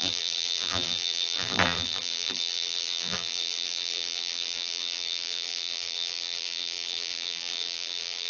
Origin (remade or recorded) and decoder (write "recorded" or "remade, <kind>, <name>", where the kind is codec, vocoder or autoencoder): remade, vocoder, BigVGAN v2